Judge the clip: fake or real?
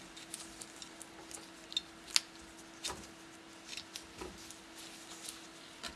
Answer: real